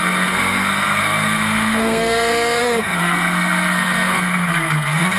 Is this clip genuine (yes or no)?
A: no